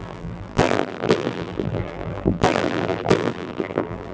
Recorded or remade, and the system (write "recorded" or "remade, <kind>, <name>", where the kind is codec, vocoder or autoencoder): remade, vocoder, BigVGAN v2